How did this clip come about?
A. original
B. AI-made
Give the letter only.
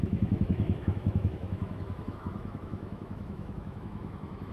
B